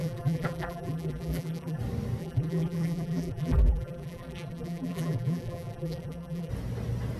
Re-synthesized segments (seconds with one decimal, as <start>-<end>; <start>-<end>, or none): 0.0-1.8; 2.2-6.5